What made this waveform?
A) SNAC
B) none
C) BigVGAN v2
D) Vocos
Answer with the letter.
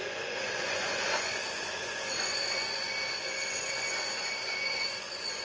D